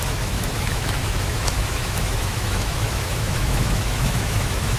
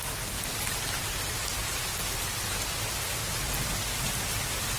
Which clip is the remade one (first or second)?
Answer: first